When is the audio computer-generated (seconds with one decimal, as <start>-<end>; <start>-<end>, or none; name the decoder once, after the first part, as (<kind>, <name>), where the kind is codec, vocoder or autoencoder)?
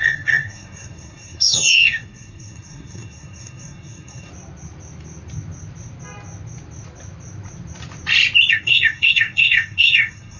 0.0-4.3 (codec, SNAC); 8.5-10.4